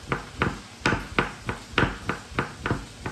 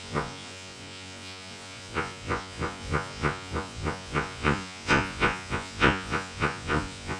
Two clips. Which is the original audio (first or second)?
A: first